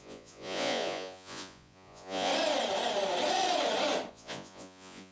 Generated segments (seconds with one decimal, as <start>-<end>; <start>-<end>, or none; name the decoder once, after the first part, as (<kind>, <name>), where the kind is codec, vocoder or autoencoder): 0.0-2.3 (vocoder, Vocos); 4.1-5.1